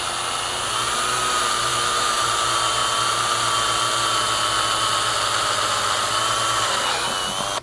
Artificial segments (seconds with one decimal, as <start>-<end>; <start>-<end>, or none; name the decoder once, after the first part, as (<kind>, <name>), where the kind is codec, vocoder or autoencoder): 1.7-2.3 (autoencoder, DAC-VAE)